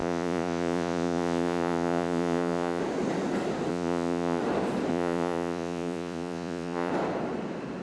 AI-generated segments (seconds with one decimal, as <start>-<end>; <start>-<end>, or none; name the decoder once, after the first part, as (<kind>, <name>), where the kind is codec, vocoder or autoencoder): 0.0-2.8 (vocoder, Vocos); 3.7-4.4; 4.9-6.9

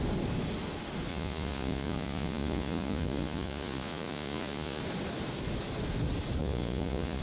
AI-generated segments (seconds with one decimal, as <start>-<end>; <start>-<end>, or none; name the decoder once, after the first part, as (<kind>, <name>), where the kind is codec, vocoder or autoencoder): 1.1-4.8 (vocoder, Vocos); 6.4-7.2

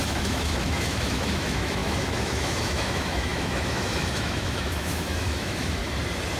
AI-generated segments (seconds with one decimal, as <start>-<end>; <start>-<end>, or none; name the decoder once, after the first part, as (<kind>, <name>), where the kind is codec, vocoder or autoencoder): 0.0-5.8 (autoencoder, DAC-VAE)

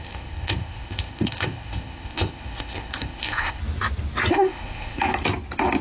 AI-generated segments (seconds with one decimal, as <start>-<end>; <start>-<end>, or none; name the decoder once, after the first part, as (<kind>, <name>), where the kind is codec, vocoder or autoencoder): 0.0-3.6 (codec, ZipCodec); 4.3-5.0